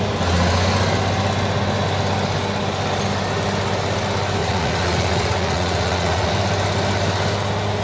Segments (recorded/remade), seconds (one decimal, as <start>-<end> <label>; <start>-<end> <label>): 0.0-4.4 recorded; 4.4-6.3 remade; 6.3-7.8 recorded